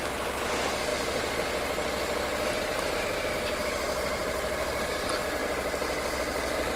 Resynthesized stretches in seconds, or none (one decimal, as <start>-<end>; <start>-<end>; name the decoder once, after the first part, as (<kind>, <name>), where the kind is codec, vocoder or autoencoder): none